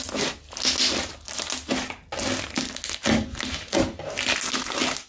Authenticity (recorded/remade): recorded